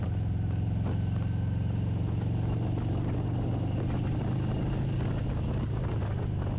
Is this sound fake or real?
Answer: real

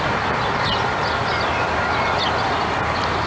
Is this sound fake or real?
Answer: real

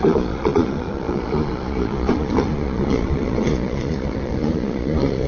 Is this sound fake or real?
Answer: fake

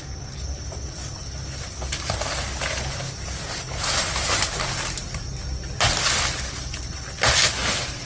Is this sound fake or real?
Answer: real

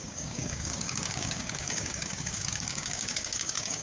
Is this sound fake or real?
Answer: fake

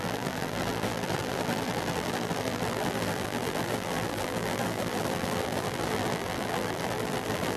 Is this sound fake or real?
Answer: fake